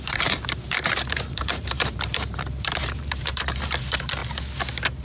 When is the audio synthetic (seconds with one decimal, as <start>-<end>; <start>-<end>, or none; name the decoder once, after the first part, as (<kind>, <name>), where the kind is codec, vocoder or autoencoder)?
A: 0.0-4.2 (vocoder, BigVGAN v2)